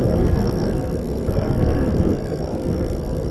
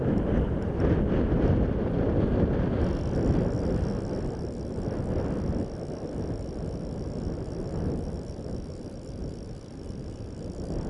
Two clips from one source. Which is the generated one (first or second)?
first